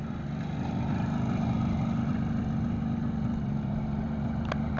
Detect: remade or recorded recorded